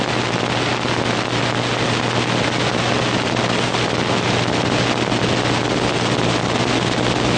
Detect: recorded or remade recorded